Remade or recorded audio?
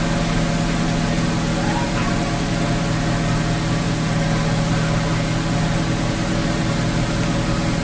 recorded